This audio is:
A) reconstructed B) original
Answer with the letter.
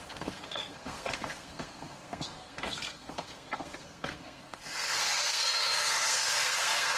A